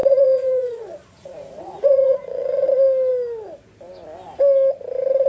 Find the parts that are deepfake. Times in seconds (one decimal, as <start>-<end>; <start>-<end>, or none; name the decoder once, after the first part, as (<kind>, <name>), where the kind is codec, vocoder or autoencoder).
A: 0.0-2.7 (vocoder, Vocos)